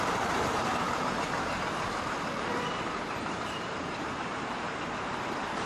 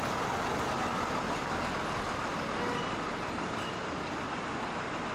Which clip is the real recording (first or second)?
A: second